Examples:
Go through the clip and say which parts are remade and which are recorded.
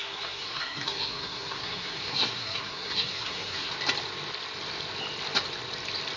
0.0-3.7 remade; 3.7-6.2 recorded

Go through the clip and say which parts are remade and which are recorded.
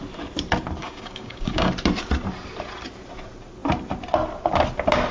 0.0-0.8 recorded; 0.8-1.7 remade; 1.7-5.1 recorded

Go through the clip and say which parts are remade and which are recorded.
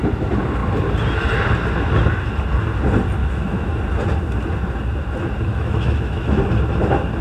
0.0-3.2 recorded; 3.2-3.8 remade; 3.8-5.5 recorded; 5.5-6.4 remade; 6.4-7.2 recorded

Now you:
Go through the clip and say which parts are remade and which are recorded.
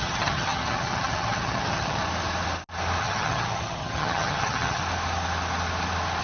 0.0-2.0 remade; 2.0-3.0 recorded; 3.0-4.8 remade; 4.8-6.2 recorded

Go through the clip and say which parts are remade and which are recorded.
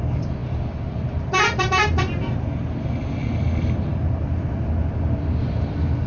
0.0-6.1 recorded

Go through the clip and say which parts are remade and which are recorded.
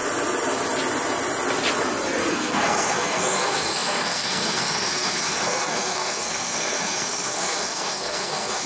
0.0-2.3 recorded; 2.3-8.7 remade